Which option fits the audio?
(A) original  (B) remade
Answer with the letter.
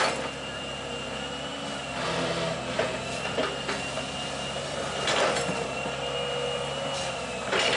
A